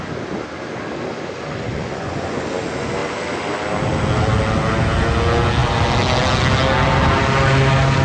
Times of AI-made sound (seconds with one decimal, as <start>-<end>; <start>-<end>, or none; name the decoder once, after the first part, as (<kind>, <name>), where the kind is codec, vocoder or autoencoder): 1.7-2.4 (vocoder, Vocos)